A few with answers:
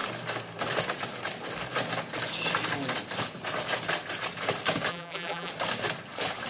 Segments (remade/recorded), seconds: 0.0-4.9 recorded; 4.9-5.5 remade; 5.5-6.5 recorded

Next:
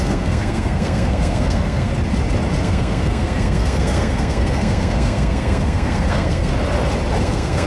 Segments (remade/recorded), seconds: 0.0-1.9 remade; 1.9-2.6 recorded; 2.6-6.5 remade; 6.5-7.2 recorded; 7.2-7.7 remade

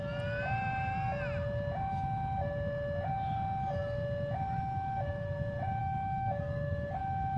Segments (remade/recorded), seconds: 0.0-5.8 recorded; 5.8-7.0 remade; 7.0-7.4 recorded

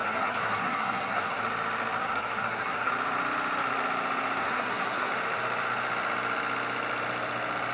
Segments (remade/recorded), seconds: 0.0-1.4 remade; 1.4-2.0 recorded; 2.0-2.9 remade; 2.9-4.4 recorded; 4.4-5.1 remade; 5.1-7.7 recorded

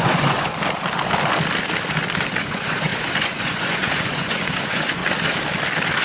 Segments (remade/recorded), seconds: 0.0-0.5 remade; 0.5-2.4 recorded; 2.4-5.0 remade; 5.0-6.0 recorded

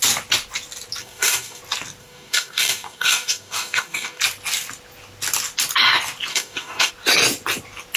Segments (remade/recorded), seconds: 0.0-1.0 recorded; 1.0-1.6 remade; 1.6-2.0 recorded; 2.0-4.2 remade; 4.2-6.3 recorded; 6.3-6.9 remade; 6.9-8.0 recorded